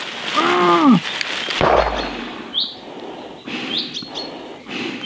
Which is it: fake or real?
real